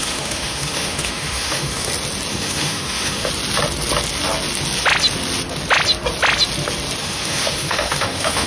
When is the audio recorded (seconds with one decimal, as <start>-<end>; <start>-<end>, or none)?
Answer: 1.9-2.3; 3.3-7.0

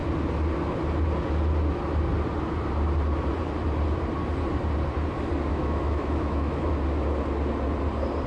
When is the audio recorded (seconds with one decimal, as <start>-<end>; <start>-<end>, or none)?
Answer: 0.0-5.5; 6.7-8.3